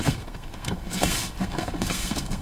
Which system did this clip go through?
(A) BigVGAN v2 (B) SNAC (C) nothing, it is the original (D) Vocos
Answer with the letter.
B